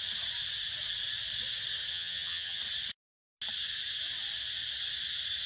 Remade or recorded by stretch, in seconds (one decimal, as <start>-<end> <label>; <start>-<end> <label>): 0.0-1.9 recorded; 1.9-2.6 remade; 2.6-5.5 recorded

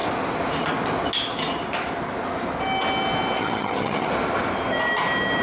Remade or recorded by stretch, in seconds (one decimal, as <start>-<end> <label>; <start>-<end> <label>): 0.0-3.4 recorded; 3.4-4.1 remade; 4.1-5.4 recorded

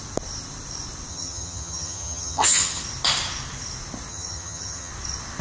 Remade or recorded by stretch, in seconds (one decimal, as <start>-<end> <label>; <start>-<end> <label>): 0.0-1.1 recorded; 1.1-2.8 remade; 2.8-4.1 recorded; 4.1-4.9 remade; 4.9-5.4 recorded

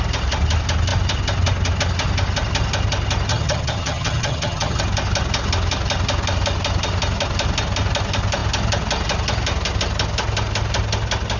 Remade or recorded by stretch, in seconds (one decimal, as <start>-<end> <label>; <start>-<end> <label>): 0.0-3.3 recorded; 3.3-4.8 remade; 4.8-11.4 recorded

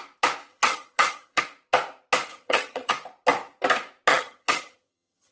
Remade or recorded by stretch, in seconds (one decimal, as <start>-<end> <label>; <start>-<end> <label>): 0.0-0.5 recorded; 0.5-1.4 remade; 1.4-2.3 recorded; 2.3-2.9 remade; 2.9-4.1 recorded; 4.1-5.3 remade

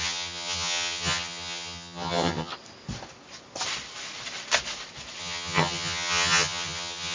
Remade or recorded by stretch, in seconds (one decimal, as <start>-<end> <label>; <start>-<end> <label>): 0.0-2.5 remade; 2.5-5.2 recorded; 5.2-7.1 remade